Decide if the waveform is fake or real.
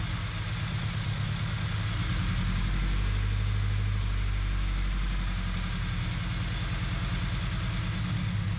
real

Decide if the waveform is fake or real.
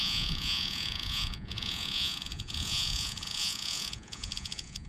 fake